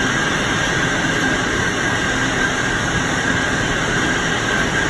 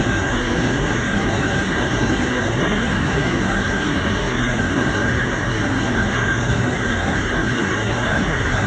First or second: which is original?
first